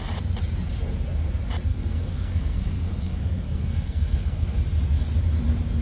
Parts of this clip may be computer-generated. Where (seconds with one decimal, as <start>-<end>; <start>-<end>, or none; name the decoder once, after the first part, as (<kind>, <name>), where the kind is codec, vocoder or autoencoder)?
1.7-4.6 (codec, SNAC)